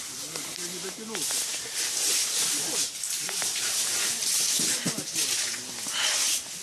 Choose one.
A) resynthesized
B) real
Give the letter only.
B